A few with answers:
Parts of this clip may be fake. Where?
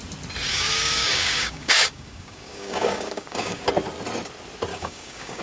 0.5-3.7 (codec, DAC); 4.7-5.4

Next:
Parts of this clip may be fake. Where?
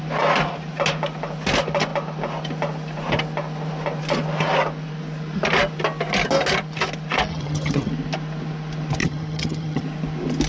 7.3-7.9 (vocoder, HiFi-GAN); 9.0-9.8